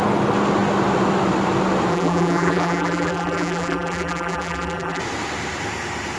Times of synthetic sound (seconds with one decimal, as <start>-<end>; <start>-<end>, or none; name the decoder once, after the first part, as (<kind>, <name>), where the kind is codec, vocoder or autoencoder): 1.9-5.0 (vocoder, BigVGAN v2)